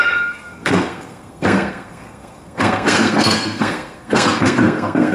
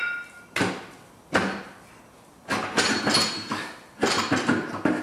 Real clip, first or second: second